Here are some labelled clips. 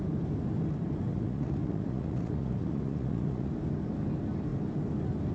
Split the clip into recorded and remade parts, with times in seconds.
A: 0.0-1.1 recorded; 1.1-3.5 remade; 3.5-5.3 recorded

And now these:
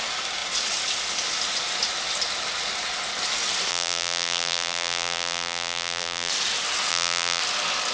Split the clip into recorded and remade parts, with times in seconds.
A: 0.0-3.7 recorded; 3.7-6.3 remade; 6.3-6.9 recorded; 6.9-7.4 remade; 7.4-7.9 recorded

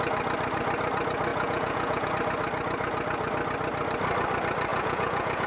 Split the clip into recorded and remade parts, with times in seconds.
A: 0.0-1.3 recorded; 1.3-2.1 remade; 2.1-4.7 recorded; 4.7-5.5 remade

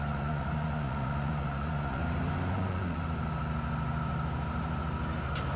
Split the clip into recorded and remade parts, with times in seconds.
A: 0.0-2.0 remade; 2.0-2.5 recorded; 2.5-3.0 remade; 3.0-5.6 recorded

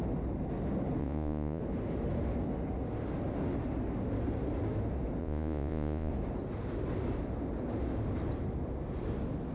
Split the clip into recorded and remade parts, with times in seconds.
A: 0.0-1.0 recorded; 1.0-1.6 remade; 1.6-5.2 recorded; 5.2-6.1 remade; 6.1-9.5 recorded

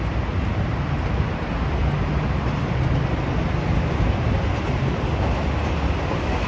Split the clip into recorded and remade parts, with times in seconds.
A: 0.0-6.5 recorded

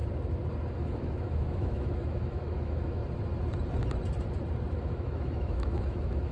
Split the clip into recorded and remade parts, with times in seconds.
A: 0.0-0.7 recorded; 0.7-3.0 remade; 3.0-4.8 recorded; 4.8-6.3 remade